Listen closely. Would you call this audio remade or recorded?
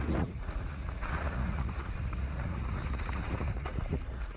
remade